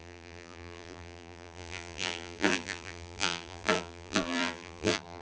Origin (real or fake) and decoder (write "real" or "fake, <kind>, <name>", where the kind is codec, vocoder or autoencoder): fake, vocoder, BigVGAN v2